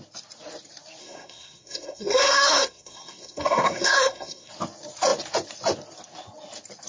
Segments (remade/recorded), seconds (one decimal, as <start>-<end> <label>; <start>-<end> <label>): 0.0-1.0 recorded; 1.0-4.5 remade; 4.5-6.9 recorded